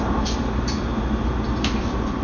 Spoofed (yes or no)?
no